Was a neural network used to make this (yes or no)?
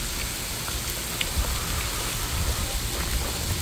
no